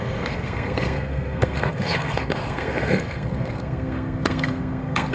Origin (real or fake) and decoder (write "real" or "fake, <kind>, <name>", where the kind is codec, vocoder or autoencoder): fake, codec, SNAC